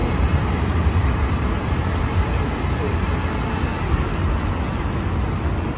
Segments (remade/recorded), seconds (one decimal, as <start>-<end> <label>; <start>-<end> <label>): 0.0-3.2 remade; 3.2-5.8 recorded